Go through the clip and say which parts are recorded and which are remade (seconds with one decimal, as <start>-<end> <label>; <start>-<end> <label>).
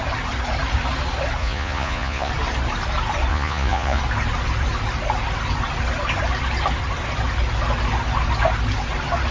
0.0-1.4 recorded; 1.4-2.3 remade; 2.3-3.3 recorded; 3.3-4.0 remade; 4.0-9.3 recorded